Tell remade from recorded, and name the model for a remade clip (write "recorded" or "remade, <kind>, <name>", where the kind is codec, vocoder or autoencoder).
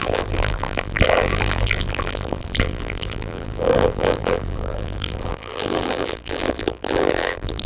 remade, vocoder, BigVGAN v2